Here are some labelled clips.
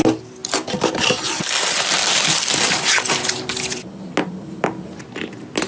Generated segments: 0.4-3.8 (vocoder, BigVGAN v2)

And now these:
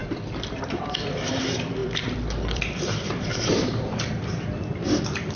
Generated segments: 0.0-5.4 (vocoder, BigVGAN v2)